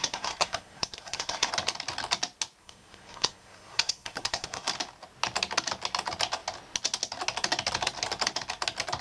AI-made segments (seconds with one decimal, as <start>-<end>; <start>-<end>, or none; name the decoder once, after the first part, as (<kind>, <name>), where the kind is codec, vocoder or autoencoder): 0.0-1.5 (codec, SNAC); 2.6-4.7